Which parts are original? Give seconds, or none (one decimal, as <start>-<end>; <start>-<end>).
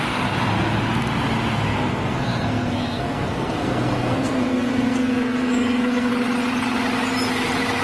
0.0-1.7; 6.1-7.8